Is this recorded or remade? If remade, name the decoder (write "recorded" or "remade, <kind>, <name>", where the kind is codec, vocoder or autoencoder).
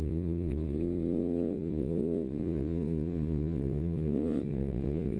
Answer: remade, vocoder, Vocos